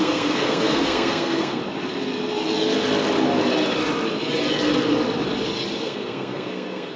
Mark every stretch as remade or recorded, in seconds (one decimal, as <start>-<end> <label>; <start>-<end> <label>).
0.0-1.6 remade; 1.6-5.8 recorded; 5.8-7.0 remade

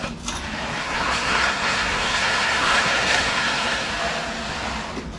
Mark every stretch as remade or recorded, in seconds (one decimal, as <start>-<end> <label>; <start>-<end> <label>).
0.0-0.8 recorded; 0.8-3.9 remade; 3.9-5.2 recorded

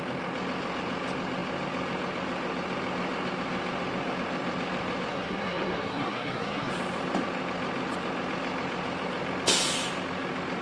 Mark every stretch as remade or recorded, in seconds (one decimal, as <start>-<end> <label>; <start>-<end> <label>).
0.0-5.1 recorded; 5.1-6.7 remade; 6.7-10.6 recorded

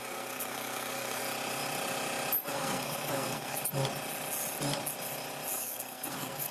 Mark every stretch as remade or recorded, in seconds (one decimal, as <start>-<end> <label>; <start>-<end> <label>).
0.0-1.2 remade; 1.2-2.4 recorded; 2.4-3.6 remade; 3.6-5.5 recorded; 5.5-6.5 remade

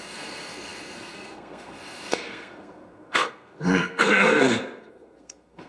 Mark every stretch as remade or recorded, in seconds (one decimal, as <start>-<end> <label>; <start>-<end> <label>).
0.0-5.7 remade

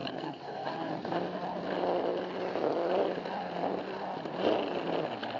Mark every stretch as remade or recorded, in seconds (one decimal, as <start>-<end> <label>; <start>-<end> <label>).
0.0-0.9 remade; 0.9-5.4 recorded

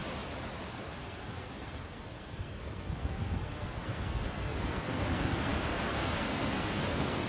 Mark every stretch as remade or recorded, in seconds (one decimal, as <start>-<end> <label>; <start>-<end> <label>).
0.0-0.7 recorded; 0.7-7.3 remade

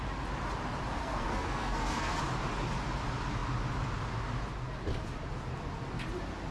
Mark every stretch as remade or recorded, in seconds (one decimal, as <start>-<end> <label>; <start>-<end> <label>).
0.0-1.0 recorded; 1.0-2.2 remade; 2.2-6.5 recorded